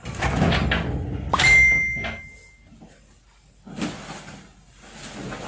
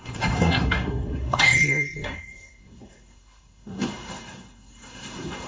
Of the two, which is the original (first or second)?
first